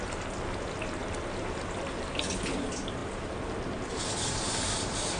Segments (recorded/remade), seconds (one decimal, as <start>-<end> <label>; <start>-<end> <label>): 0.0-5.2 recorded